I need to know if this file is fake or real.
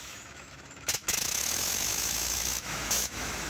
fake